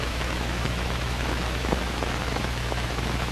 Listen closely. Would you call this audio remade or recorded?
remade